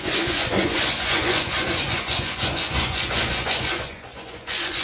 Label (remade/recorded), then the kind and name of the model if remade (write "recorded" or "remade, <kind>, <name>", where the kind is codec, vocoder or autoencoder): remade, vocoder, Vocos